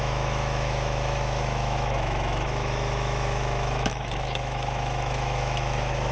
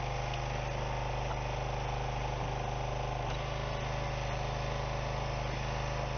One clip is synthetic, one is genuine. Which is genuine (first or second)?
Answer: second